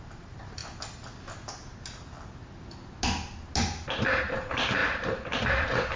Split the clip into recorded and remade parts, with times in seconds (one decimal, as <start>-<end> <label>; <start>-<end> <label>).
0.0-0.6 remade; 0.6-4.2 recorded; 4.2-6.0 remade